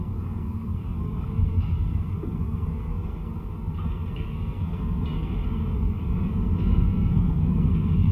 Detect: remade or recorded remade